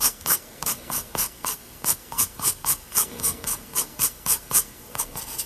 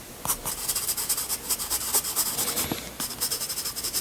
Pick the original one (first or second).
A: second